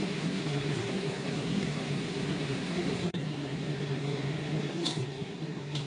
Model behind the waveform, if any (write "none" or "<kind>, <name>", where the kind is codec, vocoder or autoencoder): codec, SNAC